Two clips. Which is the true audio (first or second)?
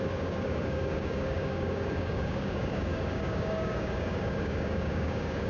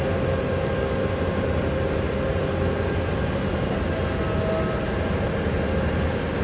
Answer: second